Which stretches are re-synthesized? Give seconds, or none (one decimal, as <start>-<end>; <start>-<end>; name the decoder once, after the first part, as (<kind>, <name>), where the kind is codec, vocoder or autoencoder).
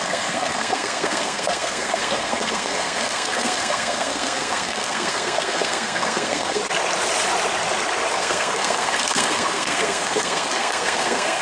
0.0-6.6 (codec, SNAC); 8.1-11.4